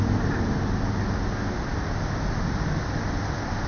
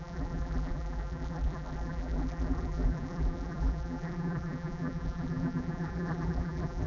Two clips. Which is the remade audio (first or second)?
second